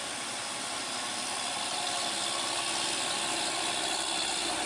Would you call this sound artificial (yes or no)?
no